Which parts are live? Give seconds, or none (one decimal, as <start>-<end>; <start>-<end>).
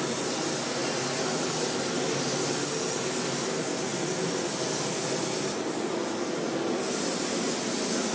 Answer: 0.0-8.1